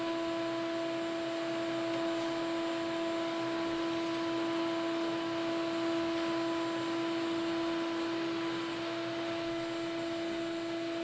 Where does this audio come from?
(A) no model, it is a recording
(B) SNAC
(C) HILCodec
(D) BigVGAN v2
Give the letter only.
A